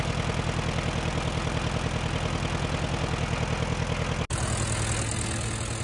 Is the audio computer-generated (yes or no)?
no